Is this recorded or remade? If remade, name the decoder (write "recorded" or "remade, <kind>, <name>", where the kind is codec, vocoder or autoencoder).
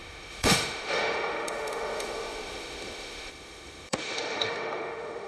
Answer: remade, autoencoder, DAC-VAE